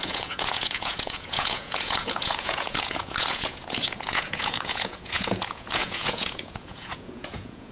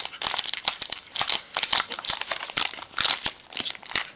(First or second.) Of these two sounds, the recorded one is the second